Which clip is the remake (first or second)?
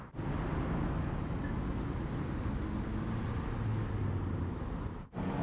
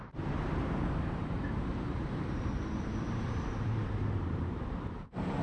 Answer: second